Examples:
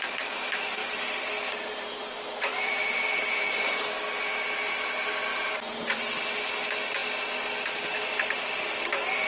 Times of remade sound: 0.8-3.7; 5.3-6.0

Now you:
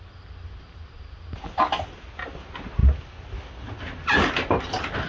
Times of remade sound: none

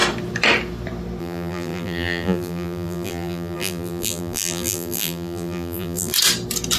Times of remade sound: 1.2-6.1

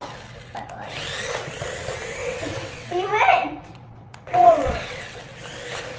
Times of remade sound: 2.2-5.2

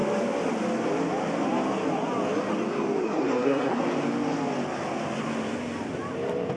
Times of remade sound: 3.0-3.8

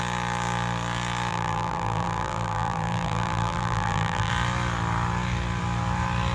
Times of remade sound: 1.3-4.3